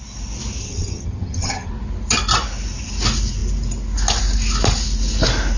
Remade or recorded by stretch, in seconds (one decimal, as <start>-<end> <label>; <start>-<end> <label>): 0.0-0.6 recorded; 0.6-1.7 remade; 1.7-5.6 recorded